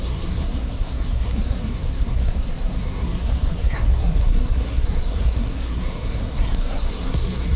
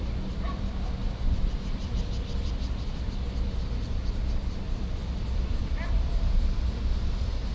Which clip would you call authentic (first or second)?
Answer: second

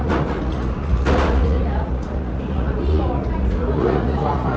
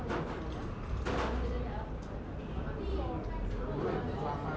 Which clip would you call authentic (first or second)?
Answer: second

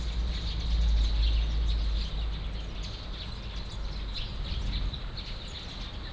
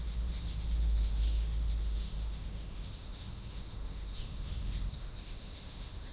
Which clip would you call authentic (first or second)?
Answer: first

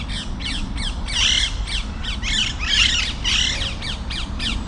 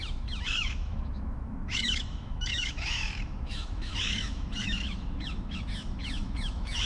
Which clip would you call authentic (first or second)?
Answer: first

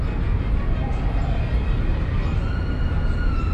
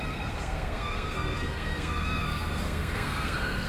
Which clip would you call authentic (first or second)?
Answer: first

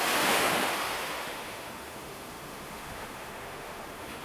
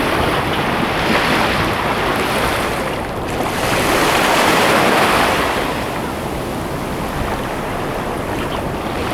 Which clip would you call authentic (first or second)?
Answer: second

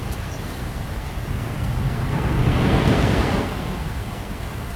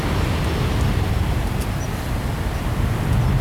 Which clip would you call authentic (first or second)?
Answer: second